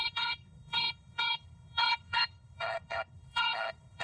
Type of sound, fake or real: fake